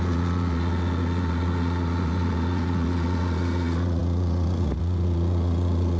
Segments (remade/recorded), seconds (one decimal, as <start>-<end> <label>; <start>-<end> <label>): 0.0-6.0 remade